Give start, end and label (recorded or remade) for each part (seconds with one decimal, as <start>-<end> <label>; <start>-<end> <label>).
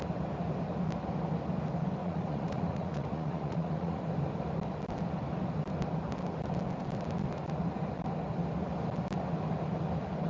0.0-2.0 recorded; 2.0-4.0 remade; 4.0-10.3 recorded